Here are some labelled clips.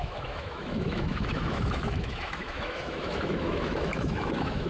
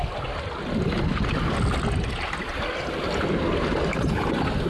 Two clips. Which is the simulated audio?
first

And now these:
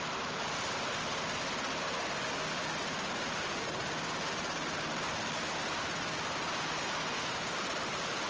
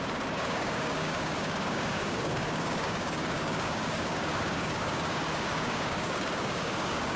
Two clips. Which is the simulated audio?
second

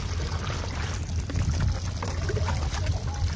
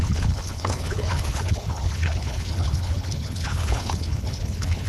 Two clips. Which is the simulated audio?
second